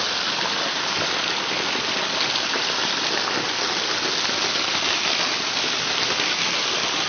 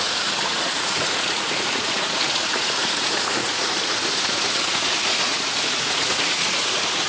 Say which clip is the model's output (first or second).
second